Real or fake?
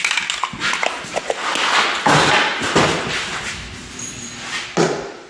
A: real